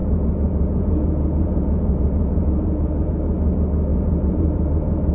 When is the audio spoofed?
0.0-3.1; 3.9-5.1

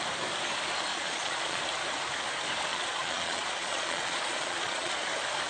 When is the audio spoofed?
0.9-1.6; 2.7-4.9

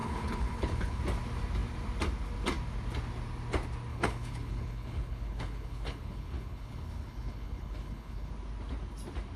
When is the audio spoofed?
0.0-1.0; 3.9-8.3